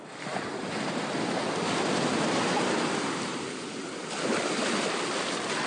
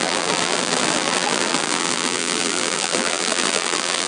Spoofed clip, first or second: second